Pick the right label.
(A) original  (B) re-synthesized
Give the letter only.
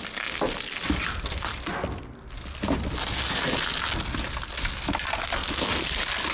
A